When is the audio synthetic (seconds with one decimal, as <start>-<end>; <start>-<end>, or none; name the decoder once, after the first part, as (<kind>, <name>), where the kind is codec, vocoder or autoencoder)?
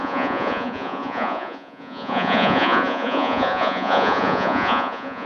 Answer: 0.0-5.3 (vocoder, Vocos)